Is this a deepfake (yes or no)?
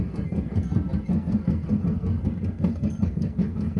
yes